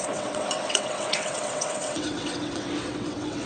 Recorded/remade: remade